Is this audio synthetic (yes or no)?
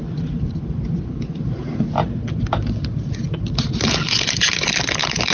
yes